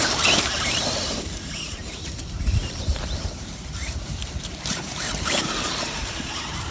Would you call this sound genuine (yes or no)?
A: no